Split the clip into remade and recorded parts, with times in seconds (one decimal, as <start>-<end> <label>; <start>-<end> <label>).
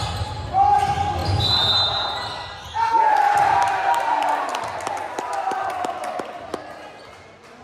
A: 0.0-7.6 recorded